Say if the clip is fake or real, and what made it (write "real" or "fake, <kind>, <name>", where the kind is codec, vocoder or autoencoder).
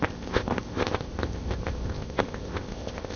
fake, codec, ZipCodec